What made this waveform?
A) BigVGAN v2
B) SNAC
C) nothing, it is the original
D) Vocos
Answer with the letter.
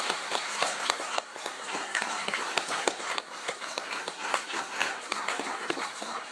B